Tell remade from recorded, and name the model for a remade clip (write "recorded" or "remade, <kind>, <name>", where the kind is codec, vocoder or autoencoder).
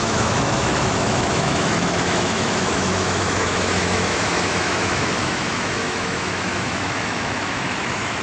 remade, autoencoder, DAC-VAE